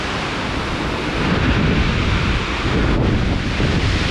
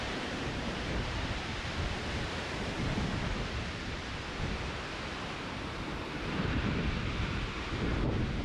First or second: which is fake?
second